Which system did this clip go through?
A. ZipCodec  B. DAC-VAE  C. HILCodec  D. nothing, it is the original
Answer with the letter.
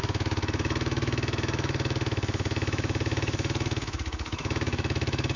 B